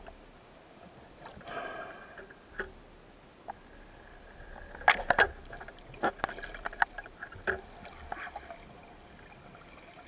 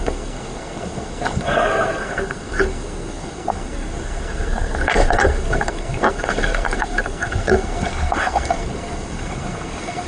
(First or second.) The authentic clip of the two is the first